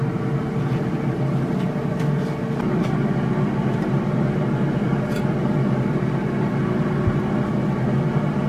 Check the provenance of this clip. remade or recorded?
recorded